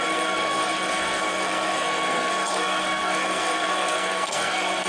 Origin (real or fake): fake